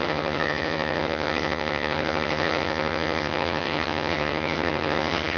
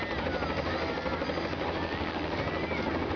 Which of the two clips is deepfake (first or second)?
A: first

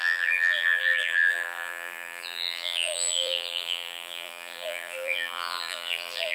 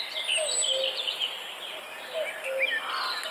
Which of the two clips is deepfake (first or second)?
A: first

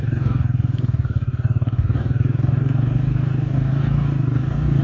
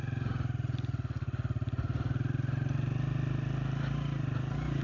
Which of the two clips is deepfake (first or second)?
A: first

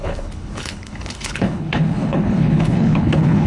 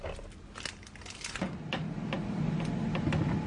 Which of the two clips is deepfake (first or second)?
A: first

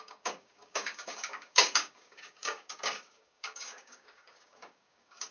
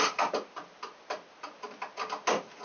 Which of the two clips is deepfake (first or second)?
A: first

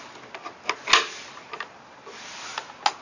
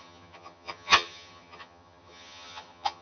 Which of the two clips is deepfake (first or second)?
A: second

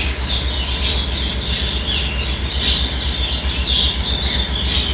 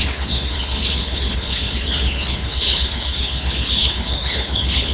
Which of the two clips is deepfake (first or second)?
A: second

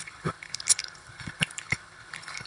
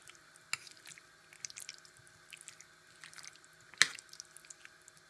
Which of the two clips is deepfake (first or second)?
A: first